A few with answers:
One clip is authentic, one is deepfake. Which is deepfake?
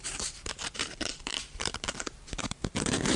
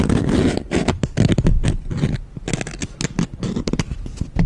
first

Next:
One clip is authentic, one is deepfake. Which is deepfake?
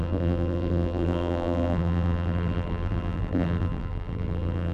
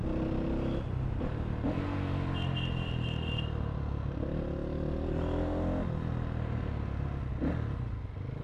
first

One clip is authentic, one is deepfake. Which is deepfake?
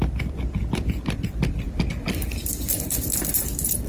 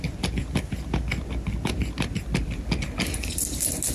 first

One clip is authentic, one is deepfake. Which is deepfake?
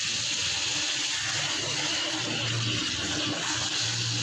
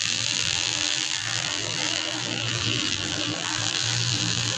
second